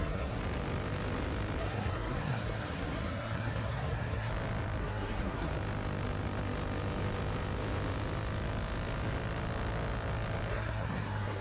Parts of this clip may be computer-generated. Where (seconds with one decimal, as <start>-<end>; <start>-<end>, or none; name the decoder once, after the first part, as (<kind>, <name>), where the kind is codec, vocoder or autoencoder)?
0.0-0.4 (codec, SNAC); 1.6-4.3; 4.8-5.5; 10.5-11.4